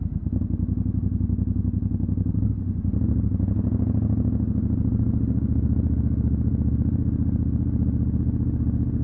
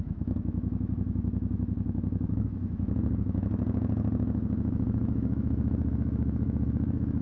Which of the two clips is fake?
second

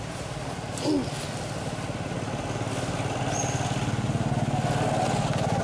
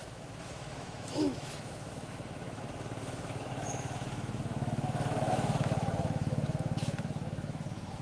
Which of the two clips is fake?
second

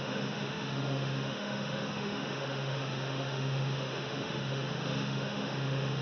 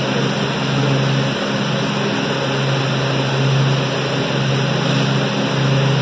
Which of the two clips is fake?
first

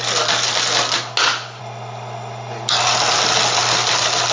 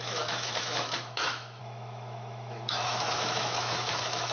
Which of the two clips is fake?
second